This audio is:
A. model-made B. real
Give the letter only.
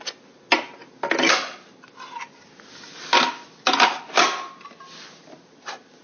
B